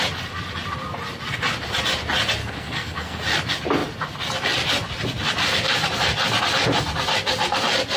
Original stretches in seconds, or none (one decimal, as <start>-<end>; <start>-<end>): 0.0-2.4; 3.2-8.0